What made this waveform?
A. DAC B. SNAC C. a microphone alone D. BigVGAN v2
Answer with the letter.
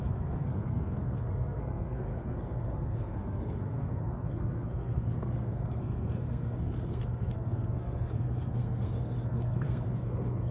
B